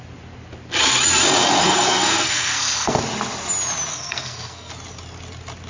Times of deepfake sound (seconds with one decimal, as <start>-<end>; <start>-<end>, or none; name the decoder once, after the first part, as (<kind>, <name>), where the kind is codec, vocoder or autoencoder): 1.6-3.0 (codec, SNAC); 3.9-4.7